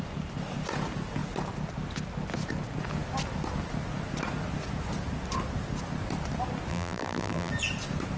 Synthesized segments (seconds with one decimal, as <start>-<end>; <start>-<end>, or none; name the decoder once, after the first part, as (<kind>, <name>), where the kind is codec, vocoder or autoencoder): 6.7-7.5 (vocoder, BigVGAN v2)